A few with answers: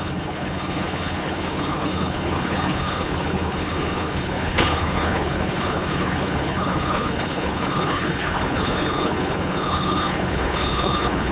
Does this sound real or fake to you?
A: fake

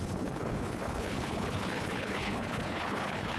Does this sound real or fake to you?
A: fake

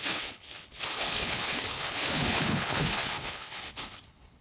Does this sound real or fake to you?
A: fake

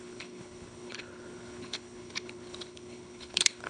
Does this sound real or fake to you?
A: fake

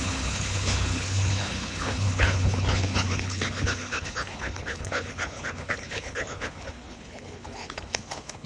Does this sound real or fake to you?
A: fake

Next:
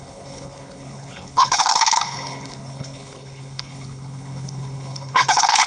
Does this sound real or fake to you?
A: fake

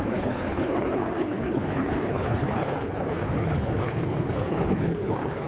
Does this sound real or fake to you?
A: fake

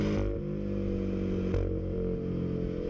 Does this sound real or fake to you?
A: real